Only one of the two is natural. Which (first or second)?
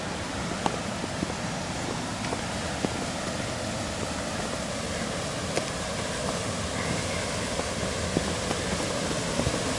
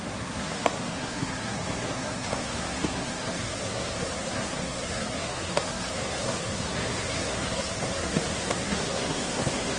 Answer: first